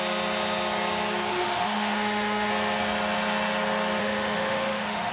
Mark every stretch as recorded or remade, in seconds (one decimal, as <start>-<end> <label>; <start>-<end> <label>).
0.0-1.3 recorded; 1.3-2.5 remade; 2.5-4.0 recorded; 4.0-5.1 remade